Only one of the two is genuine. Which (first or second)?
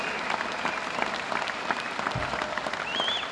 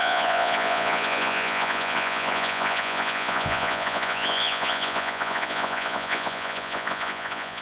first